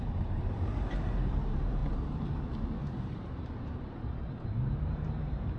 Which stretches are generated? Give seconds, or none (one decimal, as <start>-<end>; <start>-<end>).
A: 0.0-5.6